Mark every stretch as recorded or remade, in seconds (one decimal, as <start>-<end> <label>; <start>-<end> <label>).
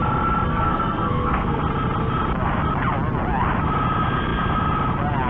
0.0-0.5 recorded; 0.5-1.6 remade; 1.6-5.3 recorded